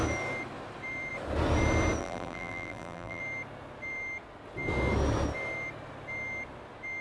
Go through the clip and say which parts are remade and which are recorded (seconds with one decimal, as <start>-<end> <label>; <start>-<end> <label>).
0.0-2.0 recorded; 2.0-3.2 remade; 3.2-7.0 recorded